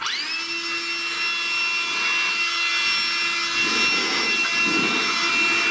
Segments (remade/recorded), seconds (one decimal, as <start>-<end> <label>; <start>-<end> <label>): 0.0-5.7 recorded